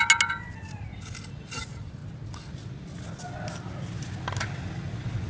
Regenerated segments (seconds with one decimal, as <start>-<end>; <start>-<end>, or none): none